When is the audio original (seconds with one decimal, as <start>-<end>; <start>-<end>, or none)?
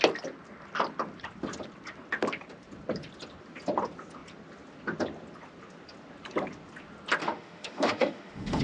0.0-7.2